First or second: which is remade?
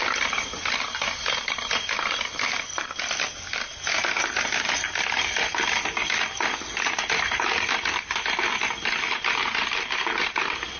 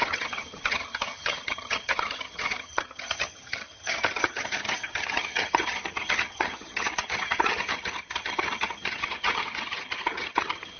second